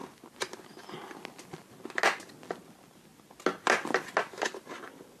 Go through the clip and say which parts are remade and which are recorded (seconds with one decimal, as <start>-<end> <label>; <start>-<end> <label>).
0.0-5.2 recorded